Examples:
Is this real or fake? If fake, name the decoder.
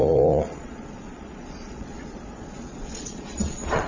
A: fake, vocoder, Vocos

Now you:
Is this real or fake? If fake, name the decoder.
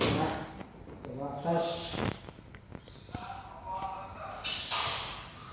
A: real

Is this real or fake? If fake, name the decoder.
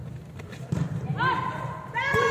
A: real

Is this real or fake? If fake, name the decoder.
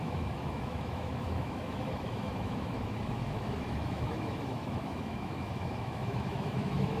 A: fake, autoencoder, DAC-VAE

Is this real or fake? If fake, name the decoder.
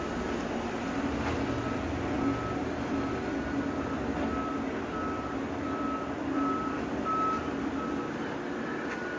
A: real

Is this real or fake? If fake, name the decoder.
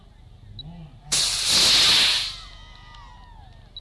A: real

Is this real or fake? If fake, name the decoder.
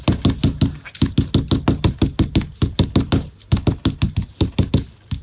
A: real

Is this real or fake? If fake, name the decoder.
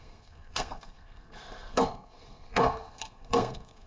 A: fake, codec, SNAC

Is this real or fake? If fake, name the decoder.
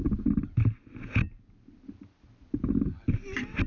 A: real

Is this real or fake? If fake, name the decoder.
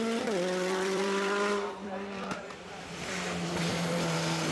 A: fake, vocoder, BigVGAN v2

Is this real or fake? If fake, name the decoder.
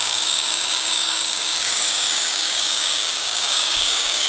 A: fake, codec, DAC